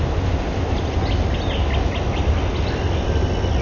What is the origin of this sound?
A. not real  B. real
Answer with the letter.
B